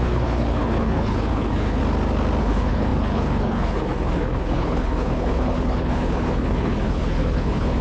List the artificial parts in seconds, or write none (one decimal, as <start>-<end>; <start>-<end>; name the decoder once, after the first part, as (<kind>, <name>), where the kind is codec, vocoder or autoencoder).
0.0-1.8 (codec, HILCodec); 2.4-7.8